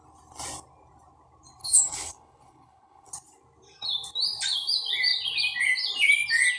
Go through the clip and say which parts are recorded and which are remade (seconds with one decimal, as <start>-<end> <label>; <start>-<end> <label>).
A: 0.0-1.6 recorded; 1.6-3.1 remade; 3.1-6.6 recorded